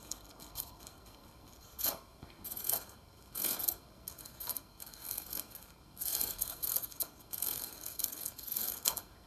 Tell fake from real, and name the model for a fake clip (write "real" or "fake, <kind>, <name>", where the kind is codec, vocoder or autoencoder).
fake, codec, SNAC